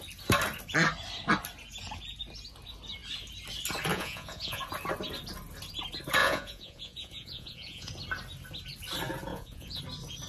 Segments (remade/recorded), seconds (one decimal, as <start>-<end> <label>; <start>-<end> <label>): 0.0-3.9 recorded; 3.9-4.6 remade; 4.6-6.2 recorded; 6.2-7.9 remade; 7.9-9.3 recorded; 9.3-9.8 remade; 9.8-10.3 recorded

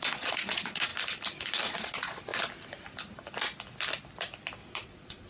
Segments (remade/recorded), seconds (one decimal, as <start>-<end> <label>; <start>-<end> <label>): 0.0-0.9 remade; 0.9-1.7 recorded; 1.7-2.3 remade; 2.3-4.7 recorded; 4.7-5.3 remade

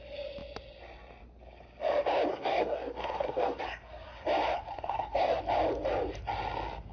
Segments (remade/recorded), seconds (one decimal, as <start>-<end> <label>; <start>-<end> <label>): 0.0-2.3 recorded; 2.3-3.6 remade; 3.6-4.7 recorded; 4.7-5.4 remade; 5.4-6.9 recorded

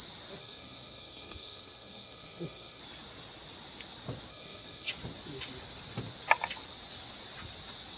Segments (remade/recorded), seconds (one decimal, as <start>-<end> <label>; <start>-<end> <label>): 0.0-0.4 recorded; 0.4-2.8 remade; 2.8-4.3 recorded; 4.3-4.9 remade; 4.9-8.0 recorded

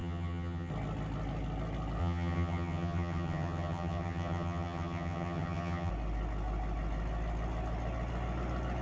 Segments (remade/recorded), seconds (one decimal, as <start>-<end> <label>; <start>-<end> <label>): 0.0-0.7 remade; 0.7-2.0 recorded; 2.0-5.9 remade; 5.9-8.8 recorded

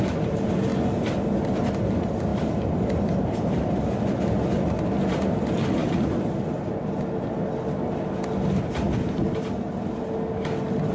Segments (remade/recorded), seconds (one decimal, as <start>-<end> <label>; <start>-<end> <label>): 0.0-10.9 recorded

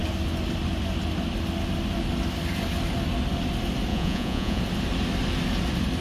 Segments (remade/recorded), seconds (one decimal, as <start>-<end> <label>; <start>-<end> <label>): 0.0-3.9 recorded; 3.9-4.6 remade; 4.6-6.0 recorded

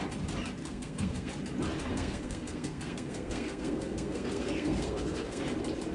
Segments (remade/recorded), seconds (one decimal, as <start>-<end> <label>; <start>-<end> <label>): 0.0-0.6 recorded; 0.6-1.3 remade; 1.3-1.9 recorded; 1.9-5.4 remade; 5.4-5.9 recorded